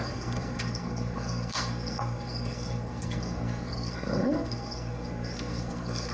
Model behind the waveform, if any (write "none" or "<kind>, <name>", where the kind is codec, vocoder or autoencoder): codec, SNAC